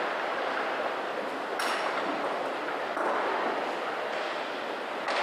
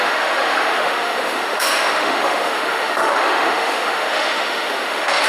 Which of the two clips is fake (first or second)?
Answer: second